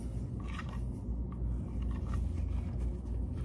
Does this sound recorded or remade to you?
recorded